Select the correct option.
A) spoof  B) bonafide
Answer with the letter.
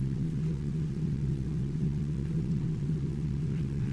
A